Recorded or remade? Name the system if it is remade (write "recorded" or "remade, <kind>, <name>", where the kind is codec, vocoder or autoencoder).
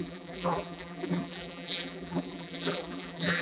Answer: remade, vocoder, BigVGAN v2